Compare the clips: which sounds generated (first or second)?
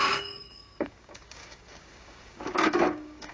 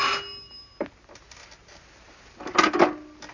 first